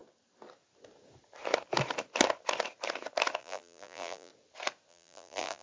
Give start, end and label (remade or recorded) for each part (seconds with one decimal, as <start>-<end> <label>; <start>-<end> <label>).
0.0-3.4 recorded; 3.4-4.3 remade; 4.3-4.9 recorded; 4.9-5.6 remade